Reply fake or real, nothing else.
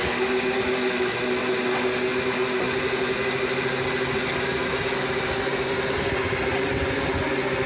real